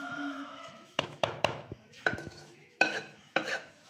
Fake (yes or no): yes